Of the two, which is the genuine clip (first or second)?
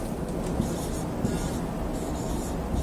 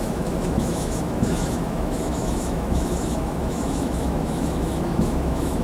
first